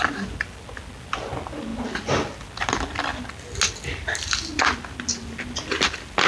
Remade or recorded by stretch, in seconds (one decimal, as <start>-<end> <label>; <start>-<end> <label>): 0.0-1.7 remade; 1.7-2.6 recorded; 2.6-3.1 remade; 3.1-6.3 recorded